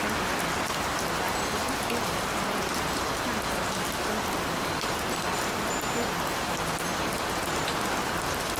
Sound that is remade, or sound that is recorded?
recorded